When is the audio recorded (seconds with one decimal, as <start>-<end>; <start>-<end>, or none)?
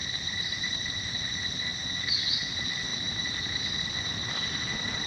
1.0-2.9; 3.7-5.1